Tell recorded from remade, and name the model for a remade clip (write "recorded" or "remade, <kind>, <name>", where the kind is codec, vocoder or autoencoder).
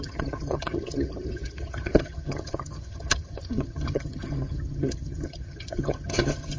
remade, vocoder, HiFi-GAN